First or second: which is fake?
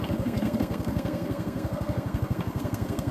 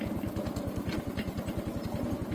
first